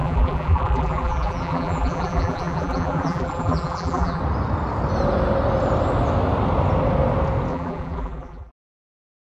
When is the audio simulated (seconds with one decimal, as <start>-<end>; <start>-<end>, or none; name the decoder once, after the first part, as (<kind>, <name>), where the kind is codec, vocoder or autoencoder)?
0.0-4.2 (vocoder, BigVGAN v2); 7.5-8.5

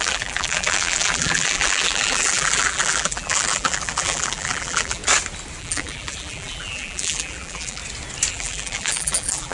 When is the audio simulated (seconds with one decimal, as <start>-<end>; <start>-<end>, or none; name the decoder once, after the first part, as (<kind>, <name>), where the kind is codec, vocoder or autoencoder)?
0.0-5.0 (vocoder, BigVGAN v2); 5.6-7.8; 8.3-9.5

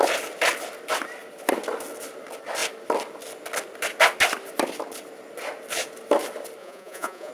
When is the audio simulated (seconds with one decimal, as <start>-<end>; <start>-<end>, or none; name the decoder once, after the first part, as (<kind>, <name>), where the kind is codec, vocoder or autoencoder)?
6.6-7.3 (vocoder, Vocos)

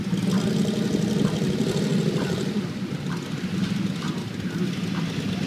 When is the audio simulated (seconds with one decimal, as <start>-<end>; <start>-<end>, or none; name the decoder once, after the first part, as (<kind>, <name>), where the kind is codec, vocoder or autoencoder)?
none

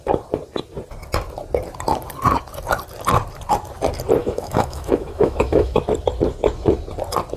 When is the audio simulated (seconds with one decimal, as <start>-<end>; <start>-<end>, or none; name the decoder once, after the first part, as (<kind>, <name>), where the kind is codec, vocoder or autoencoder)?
4.2-5.8 (autoencoder, DAC-VAE)

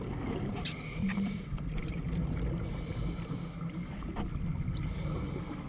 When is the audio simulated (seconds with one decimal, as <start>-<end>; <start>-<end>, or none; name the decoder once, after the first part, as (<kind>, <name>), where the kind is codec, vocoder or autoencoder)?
1.0-1.6 (vocoder, BigVGAN v2)